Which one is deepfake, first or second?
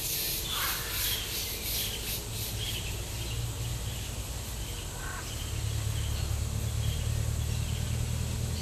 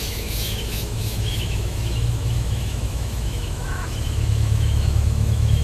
second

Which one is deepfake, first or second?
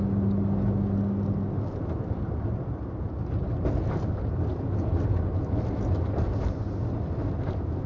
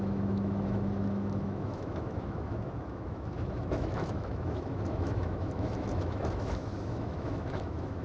second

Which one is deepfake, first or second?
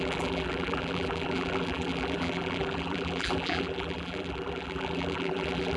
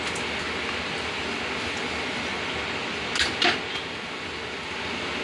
first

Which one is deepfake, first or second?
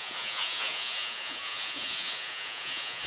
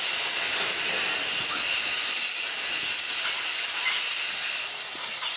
first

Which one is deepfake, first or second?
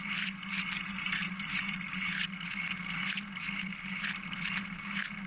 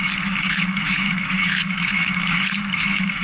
second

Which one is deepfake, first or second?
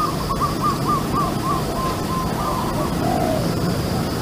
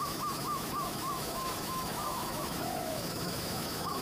second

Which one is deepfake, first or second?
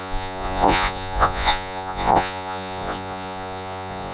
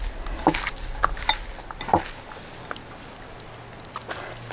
first